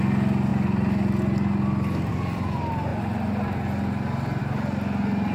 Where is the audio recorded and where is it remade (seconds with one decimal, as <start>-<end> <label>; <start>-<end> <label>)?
0.0-5.3 recorded